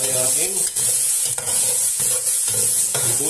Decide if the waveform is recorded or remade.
remade